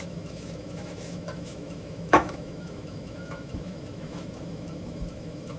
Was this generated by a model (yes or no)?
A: yes